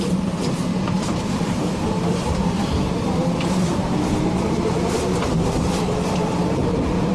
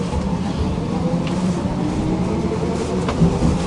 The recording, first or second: second